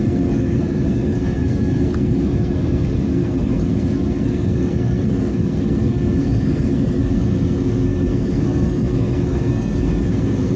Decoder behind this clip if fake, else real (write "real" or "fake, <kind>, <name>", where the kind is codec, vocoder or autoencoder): fake, codec, SNAC